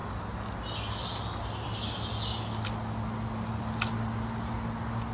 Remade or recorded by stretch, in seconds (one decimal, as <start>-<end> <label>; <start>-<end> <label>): 0.0-5.1 recorded